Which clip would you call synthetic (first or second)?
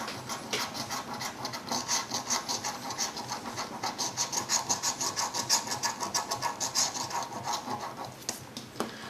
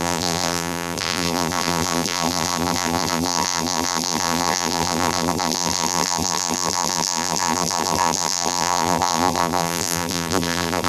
second